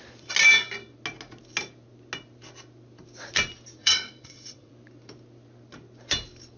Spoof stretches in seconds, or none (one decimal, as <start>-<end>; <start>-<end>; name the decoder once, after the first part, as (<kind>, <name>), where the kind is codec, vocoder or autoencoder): 3.8-4.7 (vocoder, WaveNeXt)